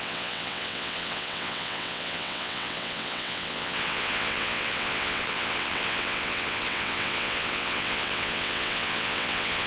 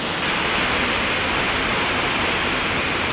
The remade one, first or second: first